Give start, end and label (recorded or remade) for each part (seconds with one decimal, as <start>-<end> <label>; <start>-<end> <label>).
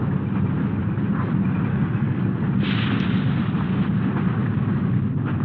0.0-1.7 recorded; 1.7-2.2 remade; 2.2-5.4 recorded